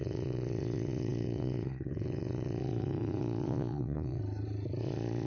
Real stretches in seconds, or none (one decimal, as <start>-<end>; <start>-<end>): 4.2-4.8